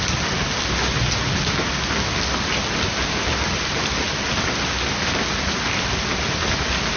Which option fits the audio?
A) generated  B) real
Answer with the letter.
B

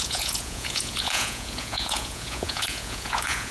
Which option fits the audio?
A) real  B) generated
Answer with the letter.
B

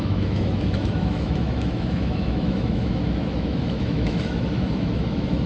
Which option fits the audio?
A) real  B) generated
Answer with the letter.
B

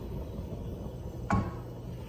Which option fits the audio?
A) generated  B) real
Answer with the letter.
B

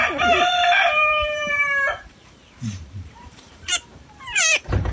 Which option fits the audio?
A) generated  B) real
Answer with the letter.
A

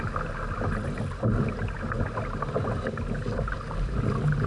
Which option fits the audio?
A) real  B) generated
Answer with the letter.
A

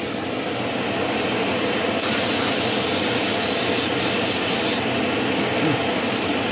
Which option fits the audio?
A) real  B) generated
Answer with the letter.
A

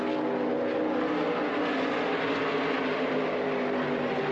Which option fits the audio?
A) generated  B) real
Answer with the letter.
B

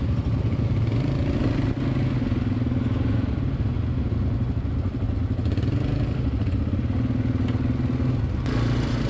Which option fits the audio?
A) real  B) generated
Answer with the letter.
A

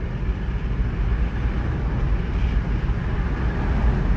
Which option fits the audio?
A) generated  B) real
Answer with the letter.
B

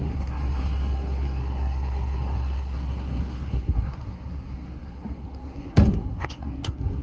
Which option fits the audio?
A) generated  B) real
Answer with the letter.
A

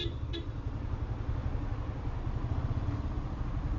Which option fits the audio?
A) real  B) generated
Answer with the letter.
A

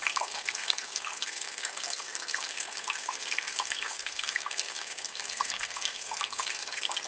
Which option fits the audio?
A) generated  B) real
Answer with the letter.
A